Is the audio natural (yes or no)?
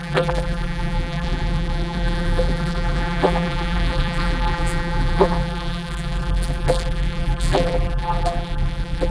no